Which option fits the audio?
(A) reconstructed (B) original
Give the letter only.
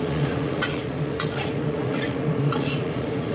A